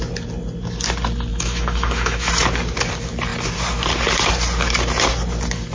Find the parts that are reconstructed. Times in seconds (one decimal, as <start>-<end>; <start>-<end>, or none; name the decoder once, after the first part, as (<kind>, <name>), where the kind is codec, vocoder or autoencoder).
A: 1.3-2.3 (autoencoder, DAC-VAE)